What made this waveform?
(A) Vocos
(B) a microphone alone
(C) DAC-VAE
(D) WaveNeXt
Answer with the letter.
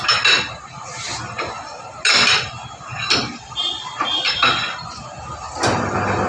B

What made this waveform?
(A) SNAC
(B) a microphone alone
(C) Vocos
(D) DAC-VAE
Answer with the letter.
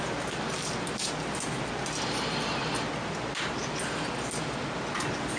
B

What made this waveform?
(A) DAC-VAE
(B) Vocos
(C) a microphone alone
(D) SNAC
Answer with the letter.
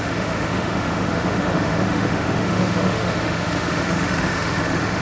A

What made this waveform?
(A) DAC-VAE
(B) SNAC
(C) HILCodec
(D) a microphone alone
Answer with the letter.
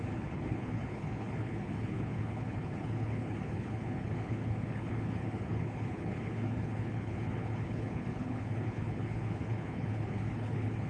C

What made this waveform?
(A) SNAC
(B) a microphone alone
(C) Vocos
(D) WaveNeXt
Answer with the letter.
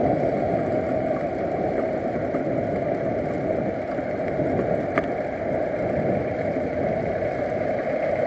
B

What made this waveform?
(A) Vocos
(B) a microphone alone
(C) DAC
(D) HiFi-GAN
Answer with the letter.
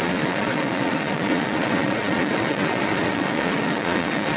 A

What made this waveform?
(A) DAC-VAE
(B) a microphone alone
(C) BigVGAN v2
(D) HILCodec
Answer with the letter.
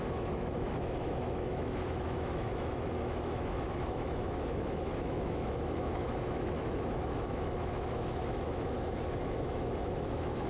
A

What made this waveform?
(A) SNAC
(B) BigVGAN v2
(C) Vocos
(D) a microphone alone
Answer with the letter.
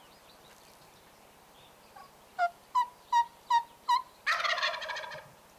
D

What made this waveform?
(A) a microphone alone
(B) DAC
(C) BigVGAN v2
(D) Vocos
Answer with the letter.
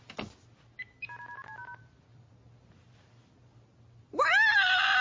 A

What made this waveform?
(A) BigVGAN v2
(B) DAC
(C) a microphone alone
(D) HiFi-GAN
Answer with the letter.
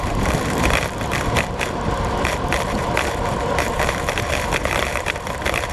A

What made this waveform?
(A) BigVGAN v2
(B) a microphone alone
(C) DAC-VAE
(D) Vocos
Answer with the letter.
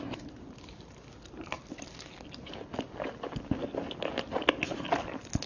B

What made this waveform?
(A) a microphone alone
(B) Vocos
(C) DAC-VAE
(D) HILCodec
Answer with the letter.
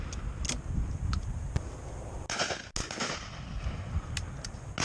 A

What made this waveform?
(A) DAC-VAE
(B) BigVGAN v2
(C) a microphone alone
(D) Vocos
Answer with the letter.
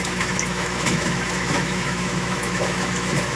A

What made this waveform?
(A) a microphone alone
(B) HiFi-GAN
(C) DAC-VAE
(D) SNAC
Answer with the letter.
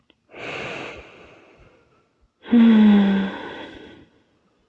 A